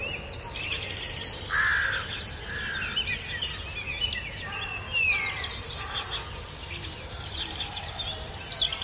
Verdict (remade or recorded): recorded